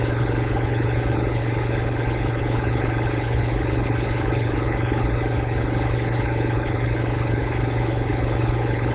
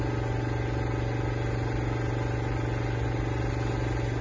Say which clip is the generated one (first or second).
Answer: first